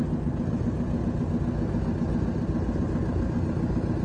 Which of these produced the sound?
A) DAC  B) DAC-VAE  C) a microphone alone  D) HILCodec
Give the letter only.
C